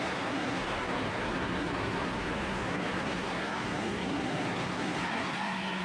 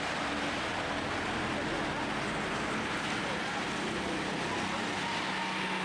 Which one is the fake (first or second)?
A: first